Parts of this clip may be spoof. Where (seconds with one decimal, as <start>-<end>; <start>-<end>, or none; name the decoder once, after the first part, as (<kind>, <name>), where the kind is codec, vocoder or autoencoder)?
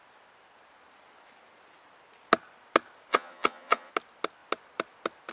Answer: 3.1-3.9 (vocoder, HiFi-GAN)